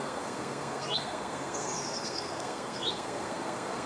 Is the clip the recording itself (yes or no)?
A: no